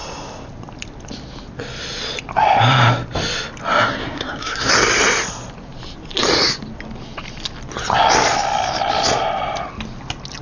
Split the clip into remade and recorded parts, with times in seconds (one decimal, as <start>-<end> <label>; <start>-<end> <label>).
0.0-4.0 recorded; 4.0-4.7 remade; 4.7-10.4 recorded